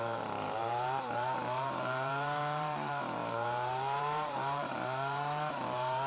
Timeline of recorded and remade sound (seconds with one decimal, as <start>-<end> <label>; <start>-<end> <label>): 0.0-6.1 remade